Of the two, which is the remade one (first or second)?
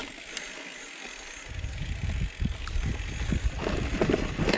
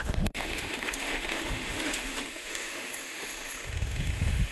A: second